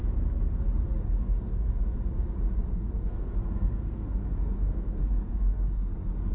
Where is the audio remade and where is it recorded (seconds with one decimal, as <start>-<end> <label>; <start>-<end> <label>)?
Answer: 0.0-1.0 recorded; 1.0-1.7 remade; 1.7-2.7 recorded; 2.7-6.3 remade